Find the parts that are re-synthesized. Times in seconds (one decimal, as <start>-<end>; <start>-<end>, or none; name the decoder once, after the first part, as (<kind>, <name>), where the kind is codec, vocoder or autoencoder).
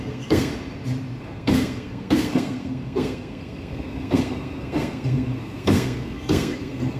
0.0-0.5 (codec, SNAC); 1.2-7.0